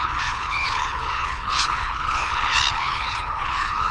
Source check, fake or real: fake